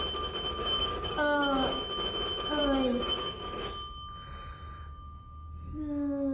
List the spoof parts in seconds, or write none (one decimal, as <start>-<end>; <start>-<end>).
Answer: 0.6-1.8; 2.6-3.7